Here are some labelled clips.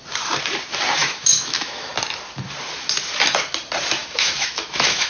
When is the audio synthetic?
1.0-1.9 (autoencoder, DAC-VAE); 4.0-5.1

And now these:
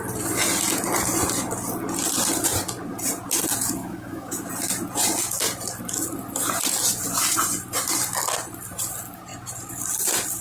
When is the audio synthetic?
3.8-4.5 (autoencoder, DAC-VAE)

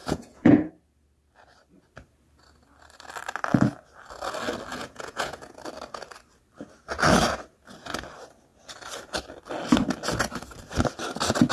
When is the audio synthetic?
0.0-0.7 (vocoder, Vocos); 4.7-5.6

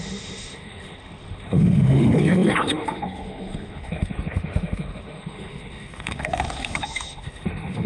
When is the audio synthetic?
0.0-7.9 (autoencoder, DAC-VAE)

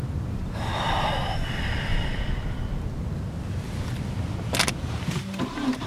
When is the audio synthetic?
none

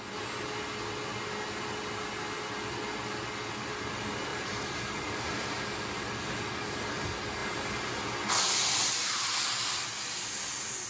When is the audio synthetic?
4.3-5.6 (vocoder, BigVGAN v2)

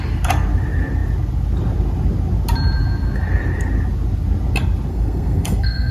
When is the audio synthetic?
4.9-5.9 (codec, SNAC)